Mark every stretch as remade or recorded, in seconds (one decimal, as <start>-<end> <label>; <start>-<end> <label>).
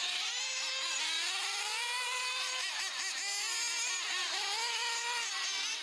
0.0-5.8 recorded